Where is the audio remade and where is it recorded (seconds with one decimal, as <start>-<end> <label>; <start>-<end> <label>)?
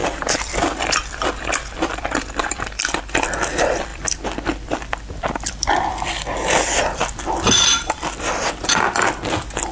0.0-3.0 remade; 3.0-3.9 recorded; 3.9-8.5 remade; 8.5-9.7 recorded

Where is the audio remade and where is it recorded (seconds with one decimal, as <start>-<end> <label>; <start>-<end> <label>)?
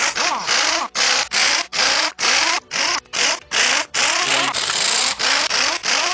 0.0-6.1 recorded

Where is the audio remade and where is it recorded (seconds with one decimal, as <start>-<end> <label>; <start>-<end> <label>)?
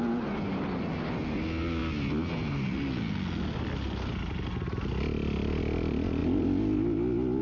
0.0-7.4 recorded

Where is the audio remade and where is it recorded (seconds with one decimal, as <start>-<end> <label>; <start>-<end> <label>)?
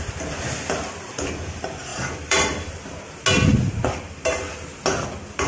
0.0-1.9 recorded; 1.9-3.0 remade; 3.0-5.5 recorded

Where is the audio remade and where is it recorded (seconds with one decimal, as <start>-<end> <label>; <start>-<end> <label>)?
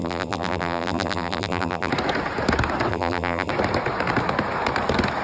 0.0-1.9 remade; 1.9-2.9 recorded; 2.9-3.5 remade; 3.5-5.2 recorded